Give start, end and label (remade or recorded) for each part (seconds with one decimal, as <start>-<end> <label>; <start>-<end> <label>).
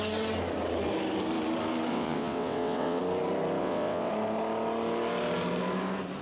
0.0-1.9 recorded; 1.9-3.0 remade; 3.0-3.6 recorded; 3.6-4.1 remade; 4.1-6.2 recorded